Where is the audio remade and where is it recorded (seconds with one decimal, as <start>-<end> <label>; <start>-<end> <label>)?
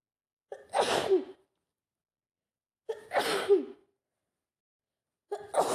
0.0-5.7 recorded